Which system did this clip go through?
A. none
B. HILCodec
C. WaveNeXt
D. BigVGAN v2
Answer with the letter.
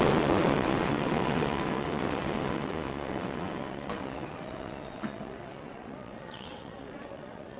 C